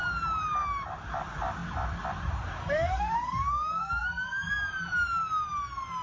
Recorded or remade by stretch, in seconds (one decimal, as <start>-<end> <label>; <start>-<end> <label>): 0.0-2.6 recorded; 2.6-4.5 remade; 4.5-6.0 recorded